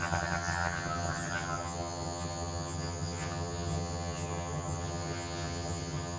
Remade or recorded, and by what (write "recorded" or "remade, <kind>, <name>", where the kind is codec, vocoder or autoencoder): remade, vocoder, HiFi-GAN